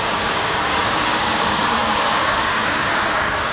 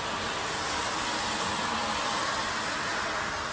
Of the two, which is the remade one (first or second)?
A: first